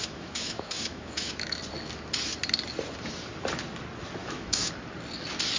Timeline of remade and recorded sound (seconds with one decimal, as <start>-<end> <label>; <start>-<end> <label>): 0.0-1.6 remade; 1.6-4.2 recorded; 4.2-4.7 remade; 4.7-5.6 recorded